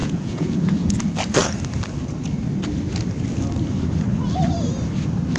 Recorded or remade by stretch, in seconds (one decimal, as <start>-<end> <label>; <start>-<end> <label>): 0.0-1.0 remade; 1.0-5.4 recorded